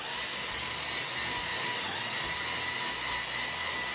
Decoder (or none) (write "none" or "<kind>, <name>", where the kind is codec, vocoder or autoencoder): none